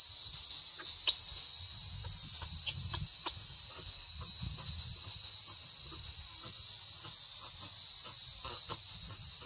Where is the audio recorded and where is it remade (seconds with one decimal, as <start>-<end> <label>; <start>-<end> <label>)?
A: 0.0-9.5 recorded

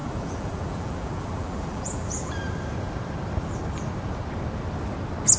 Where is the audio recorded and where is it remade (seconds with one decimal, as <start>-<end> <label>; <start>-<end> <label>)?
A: 0.0-2.3 remade; 2.3-5.4 recorded

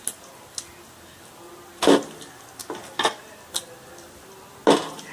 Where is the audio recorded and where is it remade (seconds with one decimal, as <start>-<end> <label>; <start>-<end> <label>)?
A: 0.0-5.1 recorded

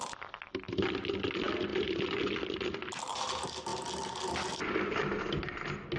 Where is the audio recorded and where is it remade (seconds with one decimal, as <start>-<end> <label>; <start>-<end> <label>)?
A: 0.0-1.7 recorded; 1.7-2.3 remade; 2.3-6.0 recorded

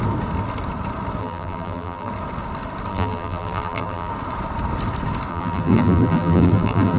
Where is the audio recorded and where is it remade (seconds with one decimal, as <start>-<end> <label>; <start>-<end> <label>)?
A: 0.0-1.2 recorded; 1.2-2.1 remade; 2.1-2.9 recorded; 2.9-4.1 remade; 4.1-5.3 recorded; 5.3-7.0 remade

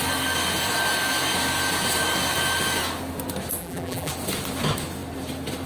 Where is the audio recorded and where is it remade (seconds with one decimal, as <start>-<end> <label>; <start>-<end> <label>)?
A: 0.0-3.6 recorded; 3.6-4.1 remade; 4.1-5.7 recorded

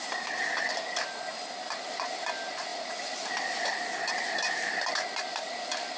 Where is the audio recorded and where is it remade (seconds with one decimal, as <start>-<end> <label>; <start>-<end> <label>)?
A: 0.0-6.0 recorded

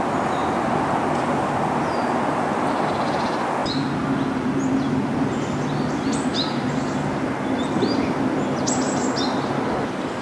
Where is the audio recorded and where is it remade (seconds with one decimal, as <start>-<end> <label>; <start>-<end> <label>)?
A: 0.0-10.2 recorded